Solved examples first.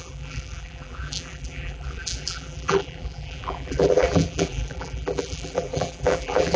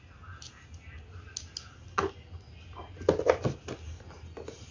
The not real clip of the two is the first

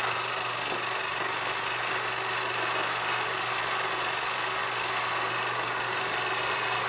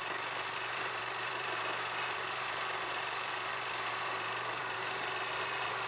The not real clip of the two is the second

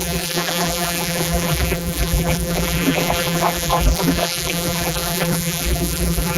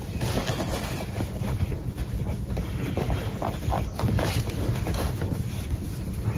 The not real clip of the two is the first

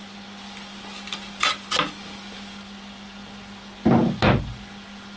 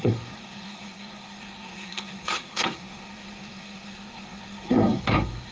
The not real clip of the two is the second